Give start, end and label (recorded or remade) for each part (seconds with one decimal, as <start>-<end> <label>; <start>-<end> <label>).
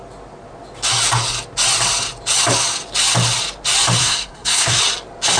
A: 0.0-4.0 recorded; 4.0-4.8 remade; 4.8-5.4 recorded